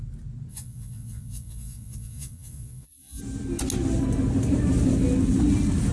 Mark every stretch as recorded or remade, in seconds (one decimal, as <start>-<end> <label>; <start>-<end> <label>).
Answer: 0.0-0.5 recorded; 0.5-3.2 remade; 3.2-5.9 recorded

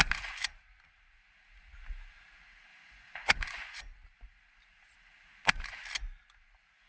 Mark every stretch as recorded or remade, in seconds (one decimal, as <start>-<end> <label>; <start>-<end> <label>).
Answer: 0.0-2.7 recorded; 2.7-3.8 remade; 3.8-6.9 recorded

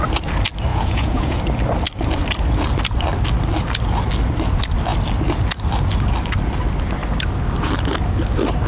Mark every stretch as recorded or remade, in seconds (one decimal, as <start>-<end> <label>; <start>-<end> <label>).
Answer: 0.0-0.7 recorded; 0.7-1.4 remade; 1.4-8.7 recorded

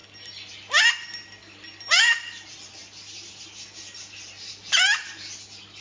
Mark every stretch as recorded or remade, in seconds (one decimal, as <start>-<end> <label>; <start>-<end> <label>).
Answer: 0.0-5.8 recorded

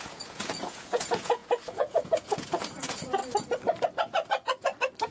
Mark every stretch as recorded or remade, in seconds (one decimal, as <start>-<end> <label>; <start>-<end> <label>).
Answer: 0.0-3.2 remade; 3.2-5.1 recorded